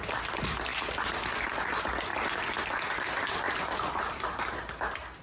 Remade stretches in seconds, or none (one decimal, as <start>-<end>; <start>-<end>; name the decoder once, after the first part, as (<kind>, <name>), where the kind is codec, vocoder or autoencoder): none